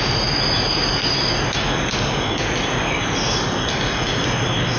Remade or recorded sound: recorded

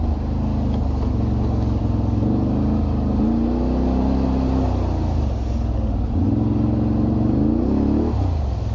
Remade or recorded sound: recorded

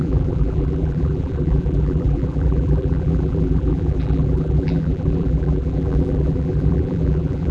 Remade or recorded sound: remade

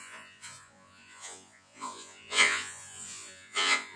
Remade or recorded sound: remade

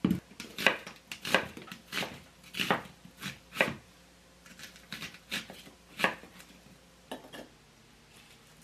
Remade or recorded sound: recorded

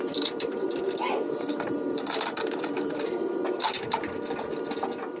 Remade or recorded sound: remade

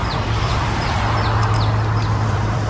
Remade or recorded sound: remade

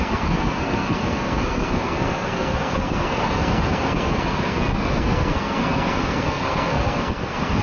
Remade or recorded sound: remade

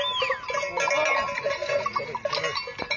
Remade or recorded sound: recorded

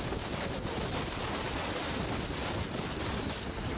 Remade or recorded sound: recorded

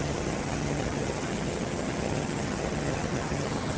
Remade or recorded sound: remade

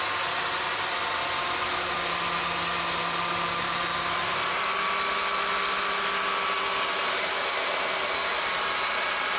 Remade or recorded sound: recorded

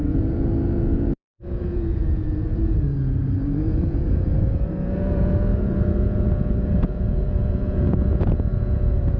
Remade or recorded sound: remade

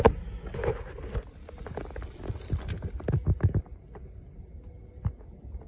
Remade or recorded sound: recorded